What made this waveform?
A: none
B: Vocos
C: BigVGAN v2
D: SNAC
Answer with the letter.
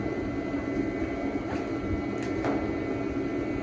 A